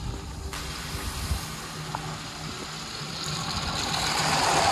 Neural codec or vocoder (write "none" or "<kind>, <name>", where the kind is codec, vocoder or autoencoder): none